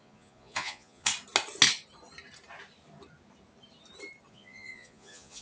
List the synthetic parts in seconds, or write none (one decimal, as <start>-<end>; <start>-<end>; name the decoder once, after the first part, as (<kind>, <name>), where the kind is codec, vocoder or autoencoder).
0.0-1.1 (vocoder, Vocos); 4.3-5.4